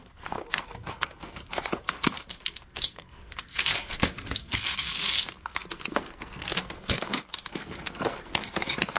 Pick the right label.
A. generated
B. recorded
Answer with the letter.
A